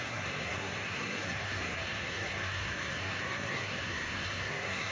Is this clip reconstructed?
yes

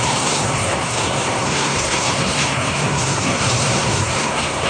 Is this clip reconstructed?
yes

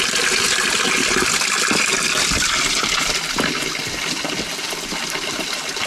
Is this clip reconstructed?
no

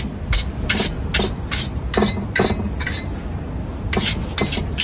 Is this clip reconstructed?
no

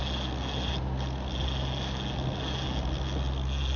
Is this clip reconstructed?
no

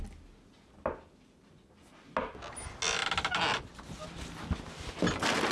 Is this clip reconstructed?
no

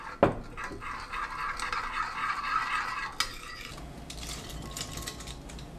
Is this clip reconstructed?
no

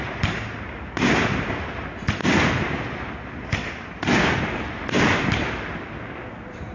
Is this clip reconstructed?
no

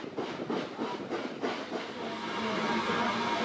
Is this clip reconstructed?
no